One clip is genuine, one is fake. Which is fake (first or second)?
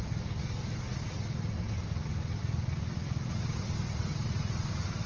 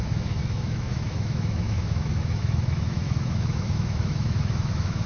second